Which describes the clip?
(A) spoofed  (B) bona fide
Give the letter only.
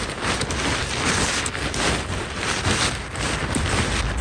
B